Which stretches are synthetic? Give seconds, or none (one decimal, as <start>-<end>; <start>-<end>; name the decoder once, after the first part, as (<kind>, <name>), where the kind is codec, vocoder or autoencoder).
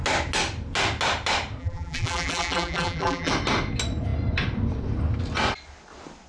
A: 1.6-3.3 (vocoder, BigVGAN v2)